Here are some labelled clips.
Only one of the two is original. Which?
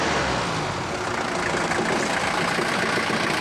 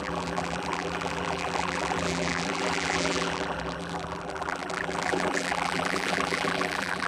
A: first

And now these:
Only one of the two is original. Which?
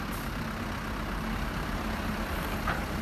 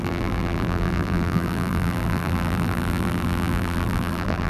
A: first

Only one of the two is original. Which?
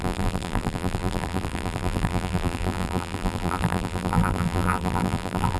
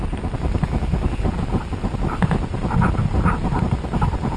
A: second